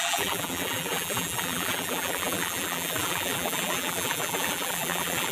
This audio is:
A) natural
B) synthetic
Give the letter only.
B